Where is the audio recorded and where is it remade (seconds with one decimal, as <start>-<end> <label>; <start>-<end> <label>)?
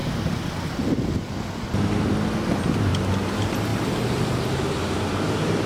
0.0-3.7 recorded; 3.7-5.7 remade